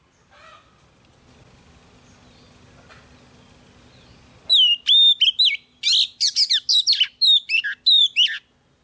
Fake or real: real